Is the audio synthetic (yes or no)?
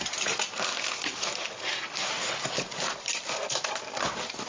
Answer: yes